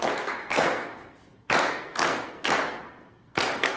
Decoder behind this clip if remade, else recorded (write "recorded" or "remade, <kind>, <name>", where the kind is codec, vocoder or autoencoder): remade, codec, SNAC